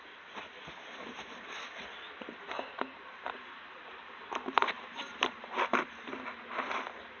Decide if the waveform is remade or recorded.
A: recorded